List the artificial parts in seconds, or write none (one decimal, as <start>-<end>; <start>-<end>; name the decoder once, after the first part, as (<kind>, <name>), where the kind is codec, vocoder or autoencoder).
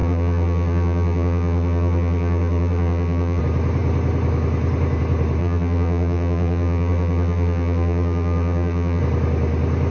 0.0-3.4 (vocoder, BigVGAN v2); 5.4-9.0